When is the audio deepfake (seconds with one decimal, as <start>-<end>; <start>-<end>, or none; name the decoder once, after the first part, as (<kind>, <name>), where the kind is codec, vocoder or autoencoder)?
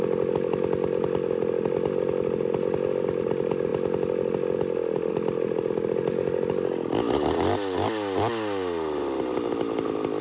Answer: none